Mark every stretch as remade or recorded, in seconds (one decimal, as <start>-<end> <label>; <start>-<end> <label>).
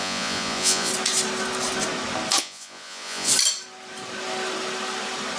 0.0-0.9 remade; 0.9-2.4 recorded; 2.4-3.3 remade; 3.3-5.4 recorded